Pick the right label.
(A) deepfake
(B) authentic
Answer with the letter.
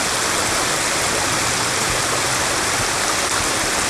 B